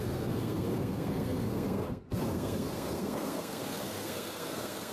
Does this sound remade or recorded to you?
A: remade